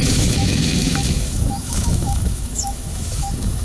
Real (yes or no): no